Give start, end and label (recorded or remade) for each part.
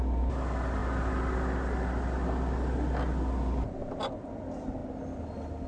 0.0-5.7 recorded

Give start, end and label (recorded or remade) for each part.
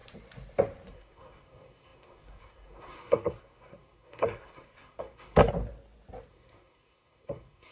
0.0-0.9 recorded; 0.9-5.4 remade; 5.4-6.3 recorded; 6.3-7.7 remade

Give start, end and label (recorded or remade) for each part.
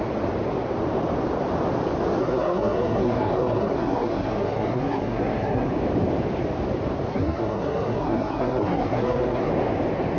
0.0-2.2 recorded; 2.2-5.7 remade; 5.7-7.1 recorded; 7.1-9.5 remade; 9.5-10.2 recorded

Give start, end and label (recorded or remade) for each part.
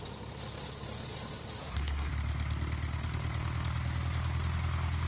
0.0-1.6 recorded; 1.6-2.1 remade; 2.1-5.1 recorded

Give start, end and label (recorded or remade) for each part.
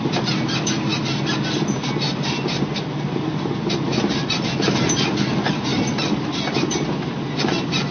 0.0-7.9 recorded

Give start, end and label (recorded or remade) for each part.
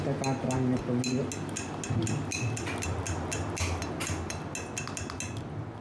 0.0-5.8 recorded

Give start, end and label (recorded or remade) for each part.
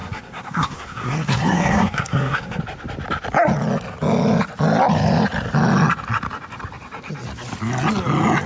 0.0-2.6 remade; 2.6-8.5 recorded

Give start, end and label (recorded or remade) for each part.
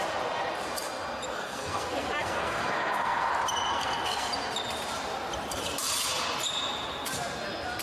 0.0-1.3 recorded; 1.3-3.3 remade; 3.3-3.7 recorded; 3.7-4.3 remade; 4.3-7.8 recorded